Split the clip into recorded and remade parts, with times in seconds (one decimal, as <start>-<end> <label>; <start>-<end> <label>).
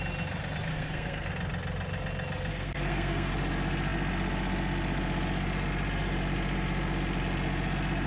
0.0-0.7 recorded; 0.7-1.3 remade; 1.3-2.5 recorded; 2.5-3.3 remade; 3.3-8.1 recorded